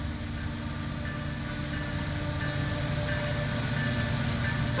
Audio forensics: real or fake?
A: real